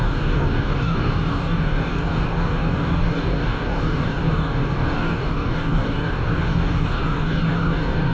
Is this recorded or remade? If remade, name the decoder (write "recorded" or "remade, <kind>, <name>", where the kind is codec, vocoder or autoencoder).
remade, codec, DAC